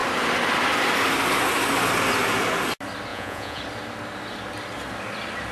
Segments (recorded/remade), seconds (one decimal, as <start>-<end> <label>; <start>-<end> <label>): 0.0-3.1 recorded; 3.1-3.6 remade; 3.6-5.5 recorded